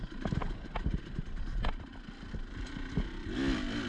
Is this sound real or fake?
real